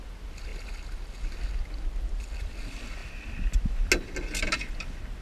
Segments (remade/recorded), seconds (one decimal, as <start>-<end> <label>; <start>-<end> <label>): 0.0-5.2 recorded